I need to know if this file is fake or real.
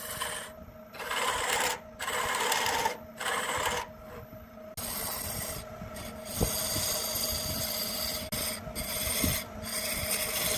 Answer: real